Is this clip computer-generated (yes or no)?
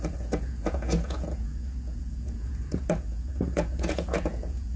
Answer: yes